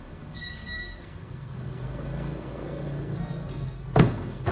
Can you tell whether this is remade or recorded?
remade